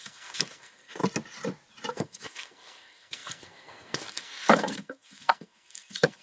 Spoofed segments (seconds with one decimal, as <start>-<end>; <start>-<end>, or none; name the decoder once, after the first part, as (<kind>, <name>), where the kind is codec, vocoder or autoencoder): 0.0-1.0 (codec, SNAC); 1.9-6.2